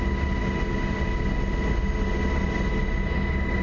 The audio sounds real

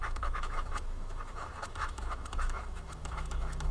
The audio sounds fake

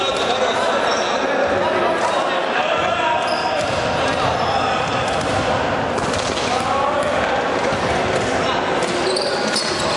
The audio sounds real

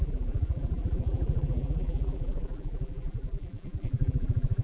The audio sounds fake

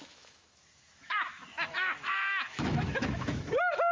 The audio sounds fake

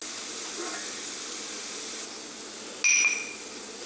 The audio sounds real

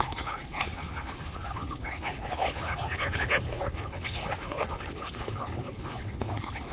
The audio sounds fake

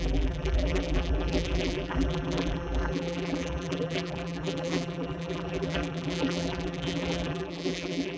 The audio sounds fake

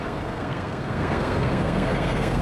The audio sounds fake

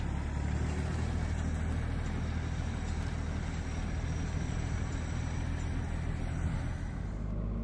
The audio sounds real